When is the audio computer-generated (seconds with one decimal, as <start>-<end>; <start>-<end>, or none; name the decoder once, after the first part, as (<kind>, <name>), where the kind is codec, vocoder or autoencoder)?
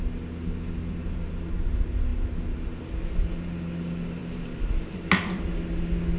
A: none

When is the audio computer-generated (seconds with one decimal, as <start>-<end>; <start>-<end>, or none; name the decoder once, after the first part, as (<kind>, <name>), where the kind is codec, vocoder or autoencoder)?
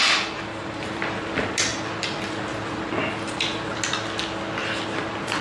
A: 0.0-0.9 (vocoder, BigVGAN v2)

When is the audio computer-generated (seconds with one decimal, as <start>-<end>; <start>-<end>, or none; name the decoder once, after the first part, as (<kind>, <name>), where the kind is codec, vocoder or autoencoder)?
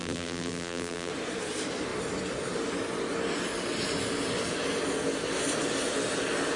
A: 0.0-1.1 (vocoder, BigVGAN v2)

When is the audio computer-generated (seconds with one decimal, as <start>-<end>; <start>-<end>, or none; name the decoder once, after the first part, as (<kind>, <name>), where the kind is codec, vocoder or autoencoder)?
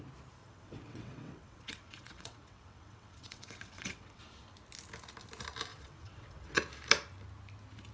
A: 0.4-4.2 (vocoder, WaveNeXt); 5.7-6.6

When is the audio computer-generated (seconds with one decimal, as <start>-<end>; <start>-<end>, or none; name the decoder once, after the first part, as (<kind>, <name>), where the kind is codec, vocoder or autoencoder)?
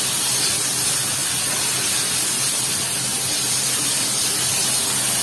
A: none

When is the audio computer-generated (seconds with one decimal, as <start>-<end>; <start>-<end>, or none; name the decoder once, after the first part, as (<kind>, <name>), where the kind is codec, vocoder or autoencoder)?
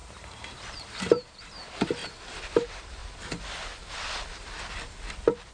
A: 0.0-2.0 (vocoder, BigVGAN v2); 2.5-3.0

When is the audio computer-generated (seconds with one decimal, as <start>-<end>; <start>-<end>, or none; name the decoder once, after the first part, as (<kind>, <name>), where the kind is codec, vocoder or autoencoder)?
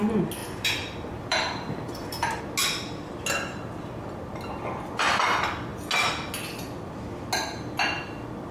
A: 0.4-2.4 (vocoder, BigVGAN v2)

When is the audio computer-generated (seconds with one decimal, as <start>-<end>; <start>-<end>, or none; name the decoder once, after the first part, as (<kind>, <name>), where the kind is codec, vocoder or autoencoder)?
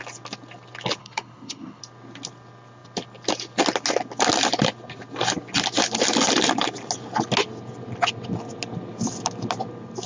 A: 1.0-1.8 (codec, HILCodec)